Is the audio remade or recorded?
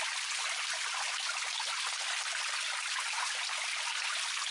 recorded